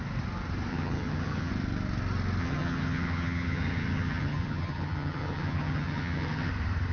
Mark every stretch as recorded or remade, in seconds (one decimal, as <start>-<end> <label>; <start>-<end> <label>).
0.0-0.7 recorded; 0.7-1.5 remade; 1.5-2.4 recorded; 2.4-6.5 remade; 6.5-6.9 recorded

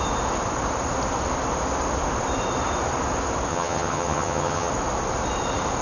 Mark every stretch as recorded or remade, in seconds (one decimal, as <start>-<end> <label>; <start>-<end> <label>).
0.0-3.5 recorded; 3.5-4.7 remade; 4.7-5.8 recorded